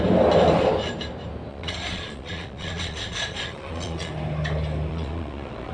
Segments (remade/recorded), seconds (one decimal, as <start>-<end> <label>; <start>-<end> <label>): 0.0-1.5 recorded; 1.5-4.1 remade; 4.1-4.9 recorded; 4.9-5.7 remade